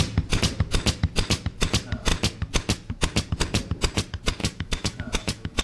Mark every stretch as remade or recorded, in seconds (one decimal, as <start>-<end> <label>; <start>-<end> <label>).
0.0-4.4 recorded; 4.4-5.6 remade